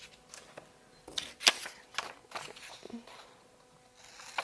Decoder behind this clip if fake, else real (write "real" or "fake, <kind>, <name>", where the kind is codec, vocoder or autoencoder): real